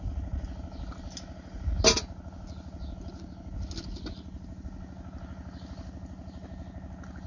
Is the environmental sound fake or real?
real